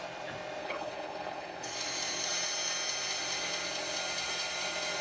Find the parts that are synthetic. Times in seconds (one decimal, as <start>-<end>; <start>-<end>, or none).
0.6-1.7